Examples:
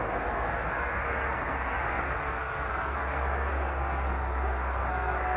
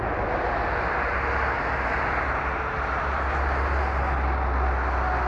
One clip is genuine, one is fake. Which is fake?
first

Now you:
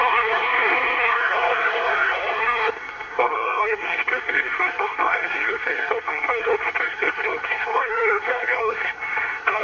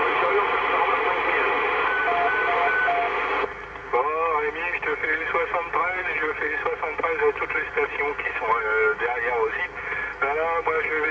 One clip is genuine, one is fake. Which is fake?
first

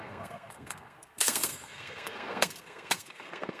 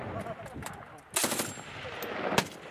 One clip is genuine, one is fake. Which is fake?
first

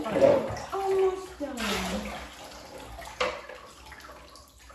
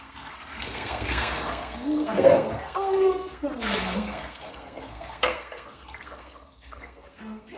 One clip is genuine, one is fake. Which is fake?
second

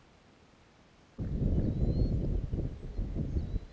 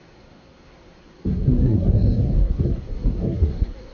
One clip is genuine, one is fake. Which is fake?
second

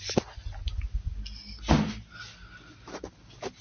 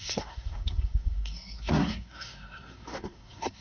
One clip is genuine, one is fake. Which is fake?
second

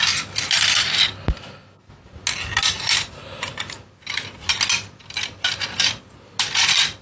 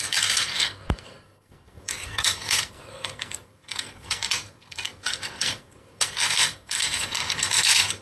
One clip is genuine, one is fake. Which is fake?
second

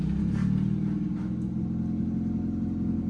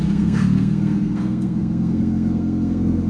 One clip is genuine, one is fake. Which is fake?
second